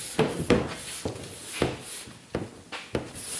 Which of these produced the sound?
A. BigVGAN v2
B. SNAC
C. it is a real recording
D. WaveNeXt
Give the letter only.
C